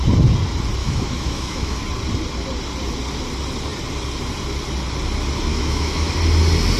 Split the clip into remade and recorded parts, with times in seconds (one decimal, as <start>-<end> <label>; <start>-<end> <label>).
0.0-0.8 recorded; 0.8-1.8 remade; 1.8-5.5 recorded; 5.5-6.1 remade; 6.1-6.8 recorded